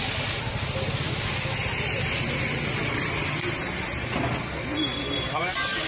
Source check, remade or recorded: recorded